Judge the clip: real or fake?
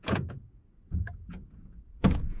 fake